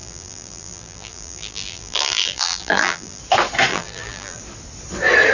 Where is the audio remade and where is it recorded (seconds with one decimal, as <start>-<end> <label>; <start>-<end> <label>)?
0.0-3.2 remade; 3.2-3.7 recorded; 3.7-4.4 remade; 4.4-5.3 recorded